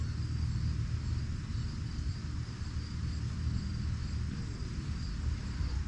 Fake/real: real